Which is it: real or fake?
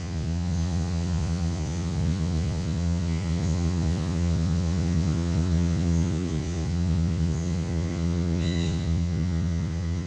fake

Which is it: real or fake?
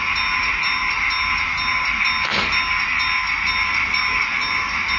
real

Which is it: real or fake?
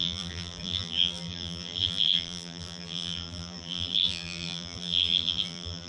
fake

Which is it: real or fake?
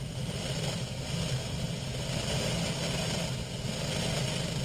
real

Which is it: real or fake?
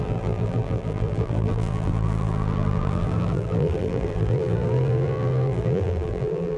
fake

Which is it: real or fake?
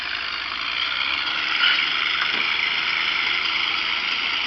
real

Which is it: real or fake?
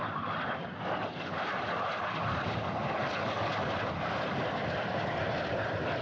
real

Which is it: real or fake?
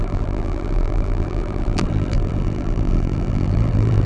fake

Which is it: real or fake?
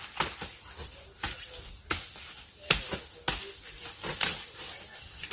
real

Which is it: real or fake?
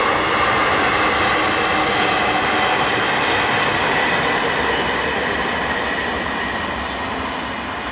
real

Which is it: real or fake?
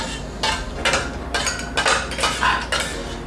real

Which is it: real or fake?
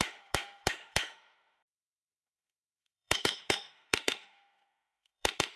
fake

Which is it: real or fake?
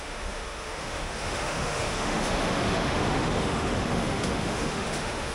fake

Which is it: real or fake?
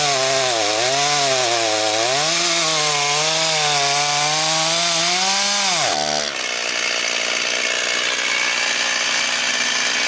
real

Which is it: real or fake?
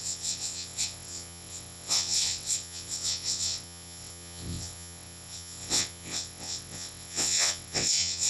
fake